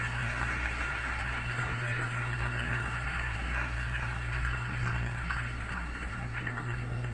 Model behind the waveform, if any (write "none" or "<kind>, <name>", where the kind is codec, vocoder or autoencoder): codec, SNAC